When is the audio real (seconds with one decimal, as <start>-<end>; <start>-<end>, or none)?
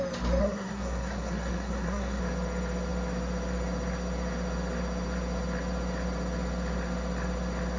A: 0.0-0.4; 2.2-7.8